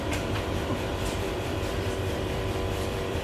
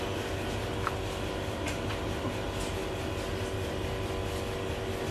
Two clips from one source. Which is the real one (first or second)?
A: second